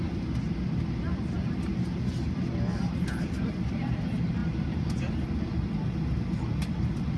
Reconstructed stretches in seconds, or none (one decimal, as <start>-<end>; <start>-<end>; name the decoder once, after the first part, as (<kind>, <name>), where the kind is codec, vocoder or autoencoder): none